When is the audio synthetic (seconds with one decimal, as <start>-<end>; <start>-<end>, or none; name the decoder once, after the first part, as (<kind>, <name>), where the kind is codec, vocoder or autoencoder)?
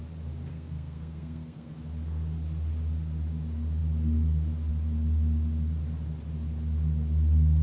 0.5-1.7 (codec, SNAC)